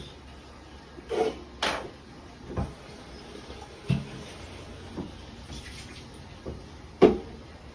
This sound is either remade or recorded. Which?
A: recorded